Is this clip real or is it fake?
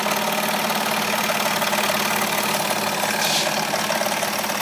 real